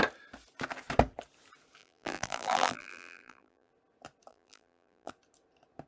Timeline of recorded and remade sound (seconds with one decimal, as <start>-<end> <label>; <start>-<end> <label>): 0.0-1.8 recorded; 1.8-3.7 remade; 3.7-4.3 recorded; 4.3-5.1 remade; 5.1-5.9 recorded